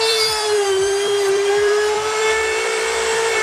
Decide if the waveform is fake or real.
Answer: fake